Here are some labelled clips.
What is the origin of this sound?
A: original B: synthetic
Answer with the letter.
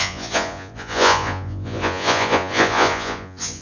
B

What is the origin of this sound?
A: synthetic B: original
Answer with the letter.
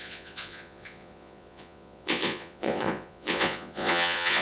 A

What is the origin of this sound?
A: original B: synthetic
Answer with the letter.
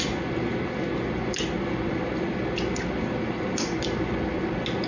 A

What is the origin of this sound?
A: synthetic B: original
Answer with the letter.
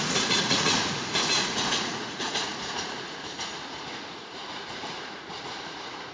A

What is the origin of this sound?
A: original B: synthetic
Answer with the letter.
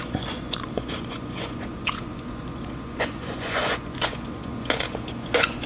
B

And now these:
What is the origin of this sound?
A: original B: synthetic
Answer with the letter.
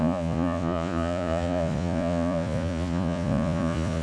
B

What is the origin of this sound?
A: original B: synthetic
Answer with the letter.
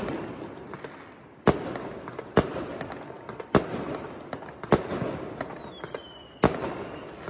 A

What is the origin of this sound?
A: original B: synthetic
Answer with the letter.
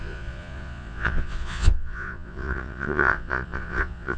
B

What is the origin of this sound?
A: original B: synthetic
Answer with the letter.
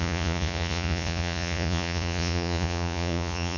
B